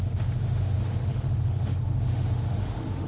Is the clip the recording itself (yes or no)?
no